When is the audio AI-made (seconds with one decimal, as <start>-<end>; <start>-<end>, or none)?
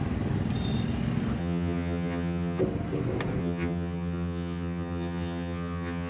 1.4-2.6; 3.4-6.1